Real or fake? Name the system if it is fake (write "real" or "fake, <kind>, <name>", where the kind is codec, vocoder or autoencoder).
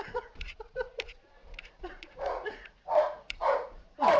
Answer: fake, vocoder, Vocos